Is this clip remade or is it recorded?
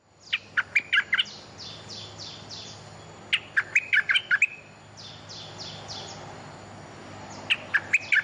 recorded